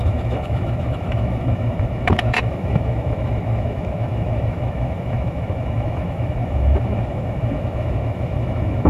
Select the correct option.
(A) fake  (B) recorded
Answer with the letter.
A